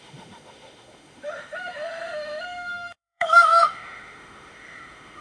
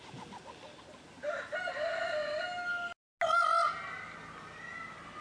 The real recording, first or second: second